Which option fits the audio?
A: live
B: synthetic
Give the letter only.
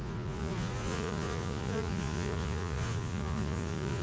B